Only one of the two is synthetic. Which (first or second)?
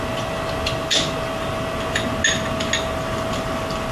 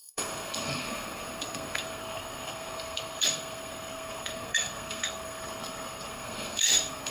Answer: second